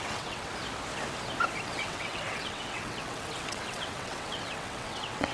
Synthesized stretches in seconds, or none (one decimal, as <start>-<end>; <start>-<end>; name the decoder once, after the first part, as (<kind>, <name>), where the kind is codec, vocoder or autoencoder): 0.0-0.5 (vocoder, WaveNeXt); 1.6-5.3